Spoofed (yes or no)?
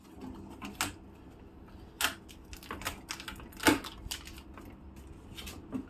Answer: no